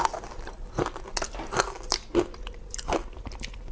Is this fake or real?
real